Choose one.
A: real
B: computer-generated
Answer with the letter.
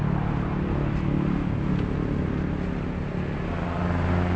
A